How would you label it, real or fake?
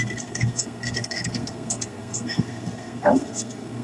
fake